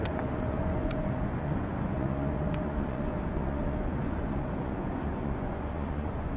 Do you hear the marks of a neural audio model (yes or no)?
yes